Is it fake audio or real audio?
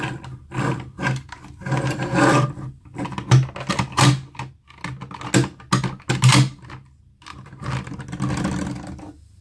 real